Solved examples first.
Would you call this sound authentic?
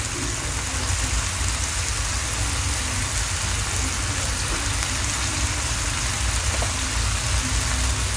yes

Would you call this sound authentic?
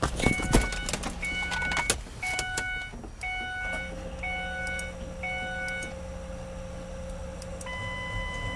yes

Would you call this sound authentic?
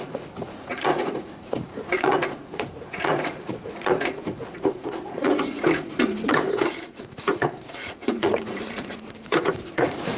no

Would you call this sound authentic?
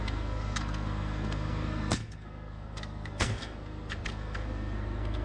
no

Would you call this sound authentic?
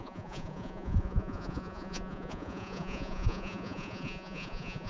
no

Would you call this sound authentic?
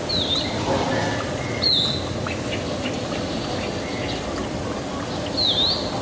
yes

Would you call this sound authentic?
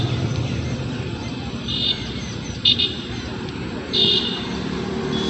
no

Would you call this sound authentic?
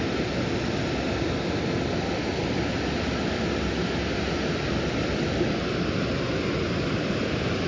yes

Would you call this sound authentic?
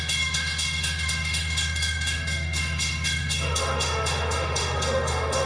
no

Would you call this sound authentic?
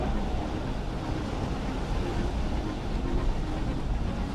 yes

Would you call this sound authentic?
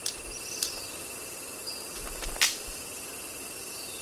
yes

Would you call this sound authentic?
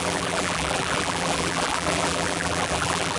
no